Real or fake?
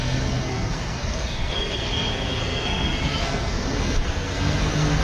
fake